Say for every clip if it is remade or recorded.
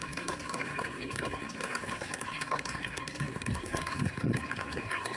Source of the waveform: remade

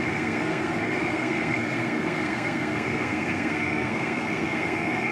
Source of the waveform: remade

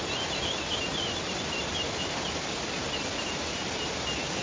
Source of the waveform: recorded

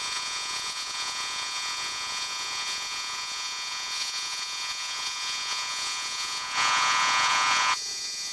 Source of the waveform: remade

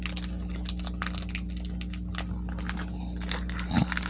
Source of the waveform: recorded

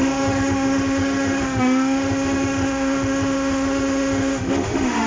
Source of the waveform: remade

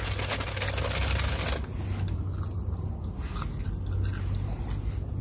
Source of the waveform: recorded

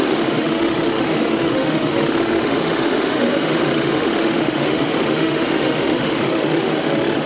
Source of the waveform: remade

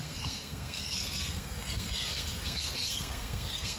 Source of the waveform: remade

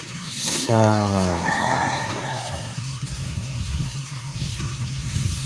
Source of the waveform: remade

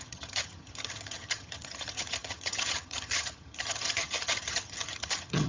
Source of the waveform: remade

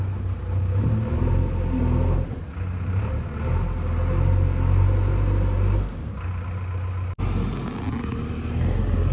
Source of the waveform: recorded